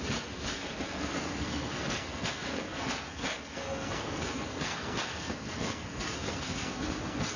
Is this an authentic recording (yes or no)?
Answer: no